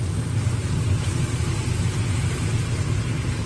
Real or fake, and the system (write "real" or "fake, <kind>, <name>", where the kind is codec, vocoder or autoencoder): real